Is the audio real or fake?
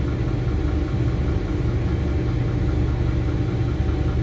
real